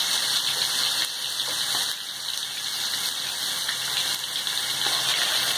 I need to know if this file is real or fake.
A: real